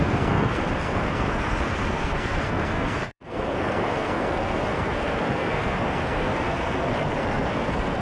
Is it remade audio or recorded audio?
remade